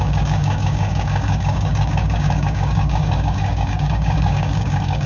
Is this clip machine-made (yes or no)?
yes